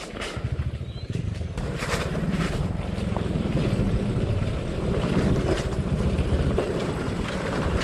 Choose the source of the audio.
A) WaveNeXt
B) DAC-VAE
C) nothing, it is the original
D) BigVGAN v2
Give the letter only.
D